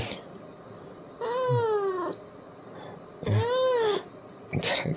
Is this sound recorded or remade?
recorded